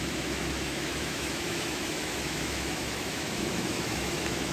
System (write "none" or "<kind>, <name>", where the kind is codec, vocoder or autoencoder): autoencoder, DAC-VAE